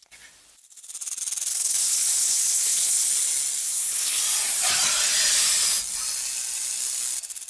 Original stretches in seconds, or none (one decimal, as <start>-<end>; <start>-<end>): 0.0-1.5; 3.1-3.6; 4.2-7.5